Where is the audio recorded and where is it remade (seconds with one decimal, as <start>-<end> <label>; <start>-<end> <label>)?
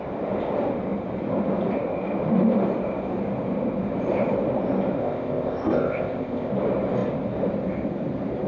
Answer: 0.0-5.0 recorded; 5.0-6.5 remade; 6.5-8.5 recorded